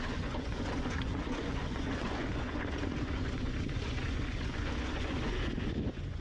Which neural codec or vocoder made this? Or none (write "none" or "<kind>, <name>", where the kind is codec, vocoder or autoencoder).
vocoder, Vocos